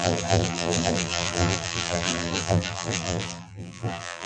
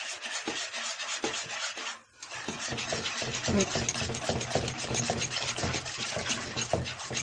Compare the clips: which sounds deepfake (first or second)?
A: first